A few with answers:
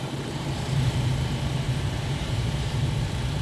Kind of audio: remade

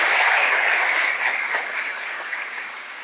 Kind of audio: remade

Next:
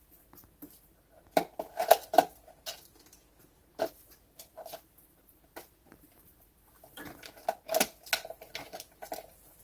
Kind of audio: remade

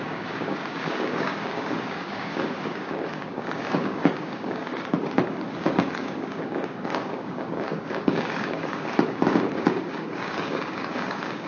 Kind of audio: remade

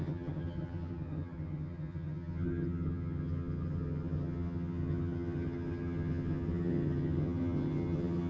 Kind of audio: remade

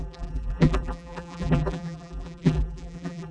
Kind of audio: remade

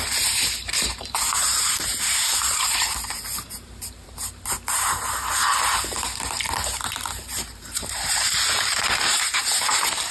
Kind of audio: remade